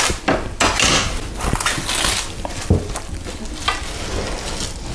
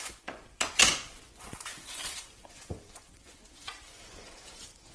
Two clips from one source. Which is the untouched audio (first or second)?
first